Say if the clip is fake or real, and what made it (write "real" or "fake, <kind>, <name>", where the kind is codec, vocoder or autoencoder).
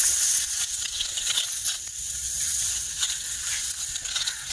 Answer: fake, vocoder, WaveNeXt